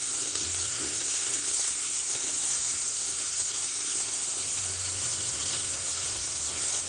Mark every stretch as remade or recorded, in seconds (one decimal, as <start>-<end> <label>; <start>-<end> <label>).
0.0-6.9 remade